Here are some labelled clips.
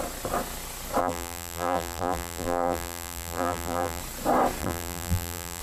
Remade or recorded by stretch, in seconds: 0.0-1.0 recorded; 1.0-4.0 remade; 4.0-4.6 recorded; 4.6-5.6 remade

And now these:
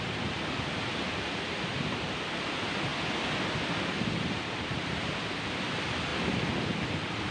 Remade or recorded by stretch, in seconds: 0.0-2.9 remade; 2.9-3.8 recorded; 3.8-7.3 remade

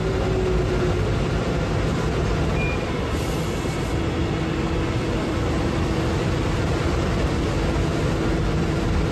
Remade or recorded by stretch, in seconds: 0.0-4.2 recorded; 4.2-7.3 remade; 7.3-9.1 recorded

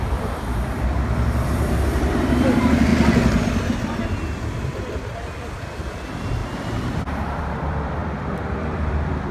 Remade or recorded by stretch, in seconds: 0.0-2.9 remade; 2.9-3.5 recorded; 3.5-6.4 remade; 6.4-7.4 recorded; 7.4-9.3 remade